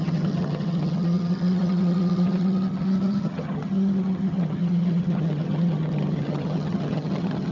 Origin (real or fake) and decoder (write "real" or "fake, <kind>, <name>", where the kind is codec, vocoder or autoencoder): fake, vocoder, HiFi-GAN